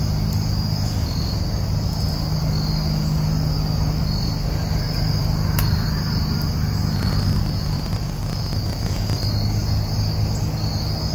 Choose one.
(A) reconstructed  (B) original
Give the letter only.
B